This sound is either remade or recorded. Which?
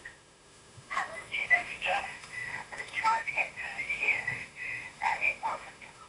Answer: remade